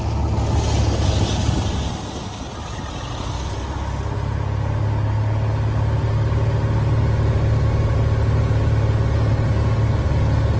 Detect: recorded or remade recorded